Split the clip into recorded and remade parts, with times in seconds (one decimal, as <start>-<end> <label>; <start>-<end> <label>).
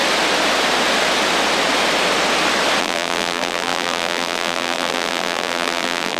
0.0-2.8 recorded; 2.8-6.2 remade